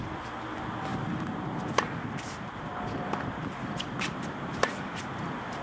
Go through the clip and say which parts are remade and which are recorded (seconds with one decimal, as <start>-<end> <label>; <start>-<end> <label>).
0.0-5.6 recorded